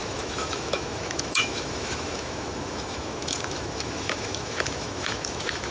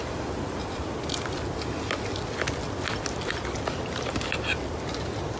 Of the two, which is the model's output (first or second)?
first